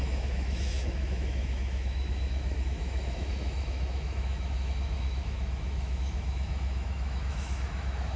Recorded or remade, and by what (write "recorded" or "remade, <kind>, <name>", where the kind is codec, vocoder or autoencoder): remade, autoencoder, DAC-VAE